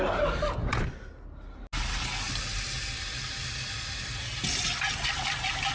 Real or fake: real